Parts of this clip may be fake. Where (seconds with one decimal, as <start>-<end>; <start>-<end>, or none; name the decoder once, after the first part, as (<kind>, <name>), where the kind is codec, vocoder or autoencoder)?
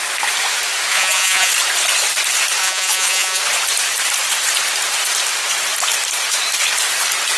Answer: 0.9-1.5 (vocoder, Vocos); 2.6-3.4